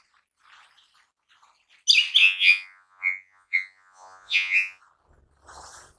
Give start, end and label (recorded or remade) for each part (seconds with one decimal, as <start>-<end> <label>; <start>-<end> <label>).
0.0-2.2 recorded; 2.2-4.8 remade; 4.8-6.0 recorded

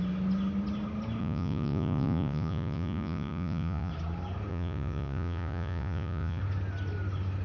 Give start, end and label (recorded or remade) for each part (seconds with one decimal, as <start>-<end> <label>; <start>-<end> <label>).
0.0-1.2 recorded; 1.2-3.9 remade; 3.9-4.5 recorded; 4.5-6.4 remade; 6.4-7.4 recorded

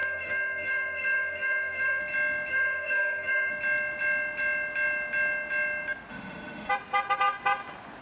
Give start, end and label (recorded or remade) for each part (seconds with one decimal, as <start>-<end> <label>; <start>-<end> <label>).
0.0-2.0 remade; 2.0-2.5 recorded; 2.5-3.5 remade; 3.5-6.1 recorded; 6.1-6.7 remade; 6.7-8.0 recorded

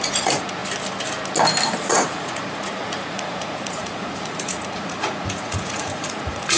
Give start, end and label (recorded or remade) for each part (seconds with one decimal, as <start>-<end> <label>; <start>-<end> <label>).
0.0-0.6 remade; 0.6-1.8 recorded; 1.8-6.6 remade

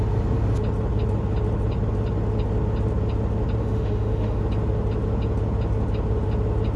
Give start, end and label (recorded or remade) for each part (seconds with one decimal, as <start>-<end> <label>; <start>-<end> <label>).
0.0-3.6 recorded; 3.6-4.4 remade; 4.4-6.8 recorded

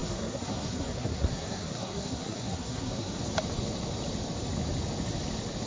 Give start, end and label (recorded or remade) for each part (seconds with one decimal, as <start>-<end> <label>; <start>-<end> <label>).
0.0-3.2 remade; 3.2-5.7 recorded